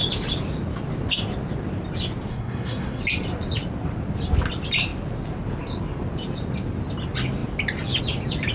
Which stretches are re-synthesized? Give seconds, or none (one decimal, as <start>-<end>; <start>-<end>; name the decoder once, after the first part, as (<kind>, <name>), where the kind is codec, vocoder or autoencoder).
2.3-3.0 (codec, SNAC)